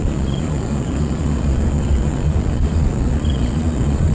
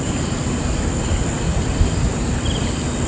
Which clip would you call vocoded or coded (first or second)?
first